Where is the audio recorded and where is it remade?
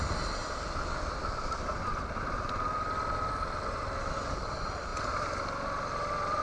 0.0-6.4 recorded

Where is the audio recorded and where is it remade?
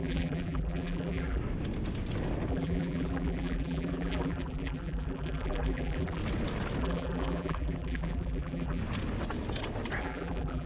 0.0-1.4 remade; 1.4-2.5 recorded; 2.5-6.2 remade; 6.2-6.8 recorded; 6.8-8.8 remade; 8.8-10.0 recorded; 10.0-10.7 remade